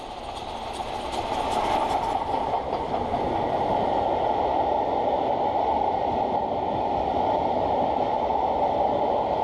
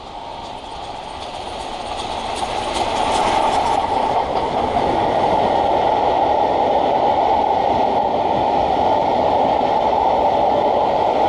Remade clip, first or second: second